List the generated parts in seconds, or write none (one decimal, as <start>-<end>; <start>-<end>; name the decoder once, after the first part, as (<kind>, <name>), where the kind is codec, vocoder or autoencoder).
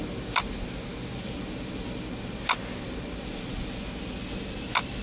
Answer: none